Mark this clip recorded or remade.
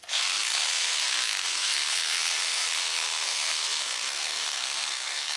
remade